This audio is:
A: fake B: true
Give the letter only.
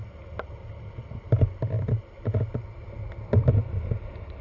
B